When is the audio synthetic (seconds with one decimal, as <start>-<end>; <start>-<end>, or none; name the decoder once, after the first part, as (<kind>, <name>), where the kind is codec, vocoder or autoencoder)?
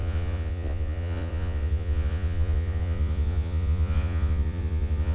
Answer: 0.0-5.1 (vocoder, Vocos)